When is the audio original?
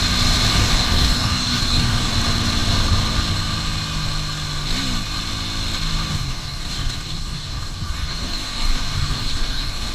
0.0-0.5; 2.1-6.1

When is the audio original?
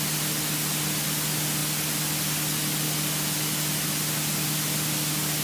0.0-5.4